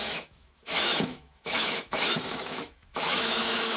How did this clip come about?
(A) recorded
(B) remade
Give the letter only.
B